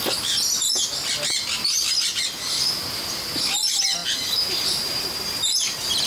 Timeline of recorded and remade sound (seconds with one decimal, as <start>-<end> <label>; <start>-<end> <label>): 0.0-6.1 recorded